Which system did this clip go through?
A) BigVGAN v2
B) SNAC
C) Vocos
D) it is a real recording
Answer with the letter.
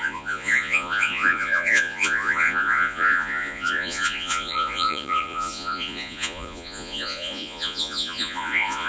C